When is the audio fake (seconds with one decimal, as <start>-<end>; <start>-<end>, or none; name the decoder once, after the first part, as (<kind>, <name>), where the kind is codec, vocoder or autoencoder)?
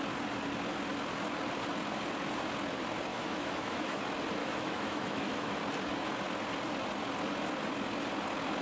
3.1-4.0 (autoencoder, DAC-VAE); 4.4-5.6